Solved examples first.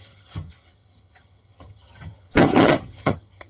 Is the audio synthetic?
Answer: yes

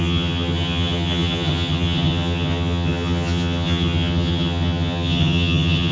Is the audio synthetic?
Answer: yes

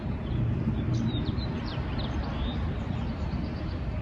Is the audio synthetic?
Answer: yes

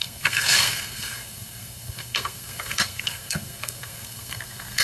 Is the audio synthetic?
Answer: yes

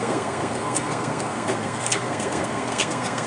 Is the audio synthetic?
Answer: yes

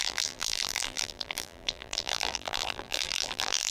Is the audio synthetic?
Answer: yes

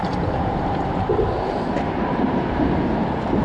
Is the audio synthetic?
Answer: yes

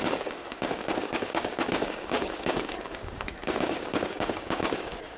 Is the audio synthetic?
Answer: yes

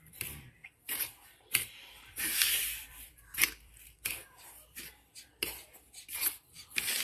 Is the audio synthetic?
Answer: yes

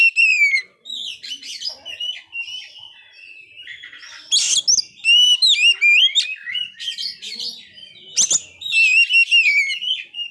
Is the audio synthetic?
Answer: no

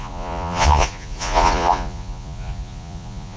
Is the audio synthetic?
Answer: yes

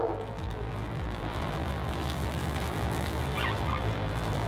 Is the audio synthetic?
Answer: yes